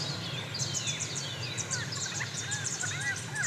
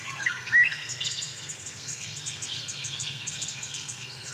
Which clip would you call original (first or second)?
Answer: first